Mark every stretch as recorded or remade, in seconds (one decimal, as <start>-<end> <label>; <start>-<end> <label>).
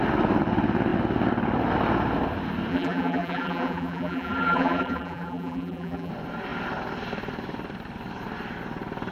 0.0-2.7 recorded; 2.7-6.1 remade; 6.1-9.1 recorded